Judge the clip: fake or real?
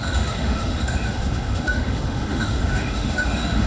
fake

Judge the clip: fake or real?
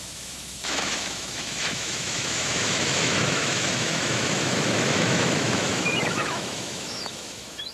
fake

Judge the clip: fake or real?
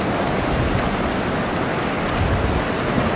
real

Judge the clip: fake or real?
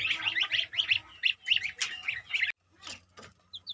real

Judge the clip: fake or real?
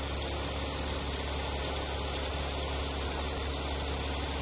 real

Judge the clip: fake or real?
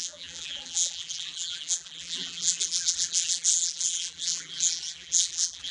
fake